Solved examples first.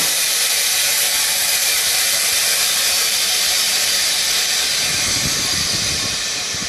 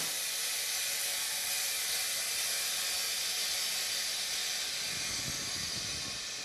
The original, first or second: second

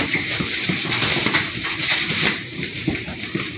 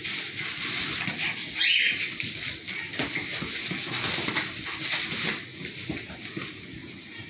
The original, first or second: second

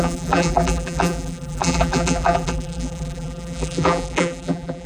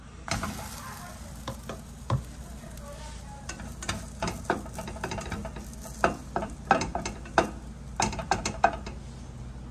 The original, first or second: second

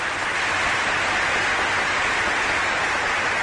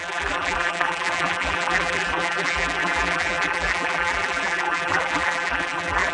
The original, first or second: first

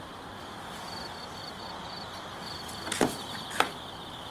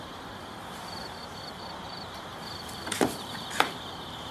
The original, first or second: first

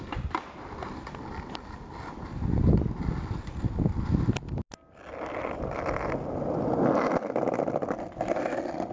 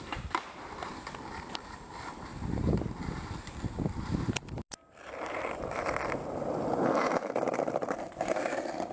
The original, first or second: first